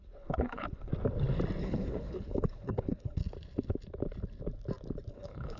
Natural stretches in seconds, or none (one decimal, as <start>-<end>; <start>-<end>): 0.9-1.6; 3.2-5.1